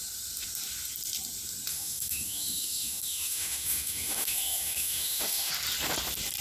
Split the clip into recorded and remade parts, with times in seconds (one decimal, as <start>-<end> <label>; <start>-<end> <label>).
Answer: 0.0-1.7 recorded; 1.7-5.5 remade; 5.5-6.4 recorded